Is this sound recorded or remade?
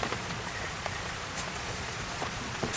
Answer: remade